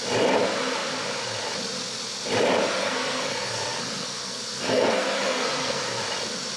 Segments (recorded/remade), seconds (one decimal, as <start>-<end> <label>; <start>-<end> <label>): 0.0-2.8 recorded; 2.8-6.0 remade; 6.0-6.6 recorded